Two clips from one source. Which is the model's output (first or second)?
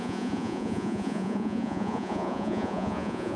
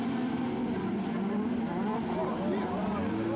first